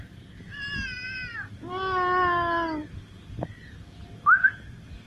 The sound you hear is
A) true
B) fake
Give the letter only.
A